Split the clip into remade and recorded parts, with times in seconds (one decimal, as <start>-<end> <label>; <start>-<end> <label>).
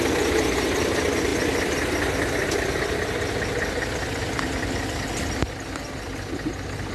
0.0-6.9 recorded